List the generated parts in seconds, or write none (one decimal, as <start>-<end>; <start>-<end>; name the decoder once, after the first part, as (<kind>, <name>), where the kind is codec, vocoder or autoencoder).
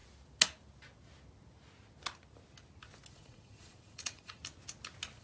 3.1-4.4 (vocoder, Vocos)